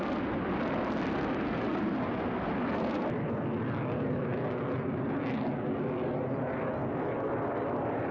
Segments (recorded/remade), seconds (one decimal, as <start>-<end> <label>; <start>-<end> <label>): 0.0-8.1 recorded